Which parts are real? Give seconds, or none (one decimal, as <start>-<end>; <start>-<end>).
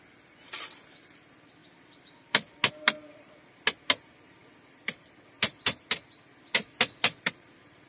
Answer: 0.0-7.9